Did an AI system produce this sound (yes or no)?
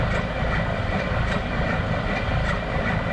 no